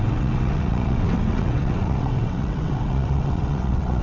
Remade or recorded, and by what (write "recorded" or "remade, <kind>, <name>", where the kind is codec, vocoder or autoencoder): remade, vocoder, WaveNeXt